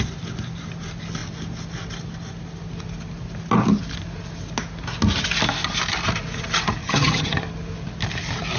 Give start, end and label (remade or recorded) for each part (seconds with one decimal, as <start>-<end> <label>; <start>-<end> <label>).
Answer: 0.0-6.8 recorded; 6.8-7.4 remade; 7.4-8.6 recorded